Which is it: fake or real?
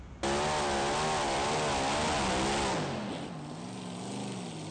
real